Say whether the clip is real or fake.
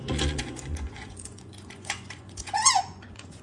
fake